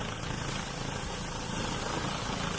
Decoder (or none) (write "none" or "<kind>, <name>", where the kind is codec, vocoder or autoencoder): none